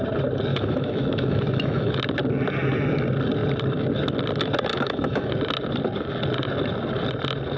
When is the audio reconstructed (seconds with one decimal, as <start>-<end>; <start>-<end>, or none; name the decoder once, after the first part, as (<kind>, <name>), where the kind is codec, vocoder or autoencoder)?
0.5-2.0 (autoencoder, DAC-VAE); 4.7-5.3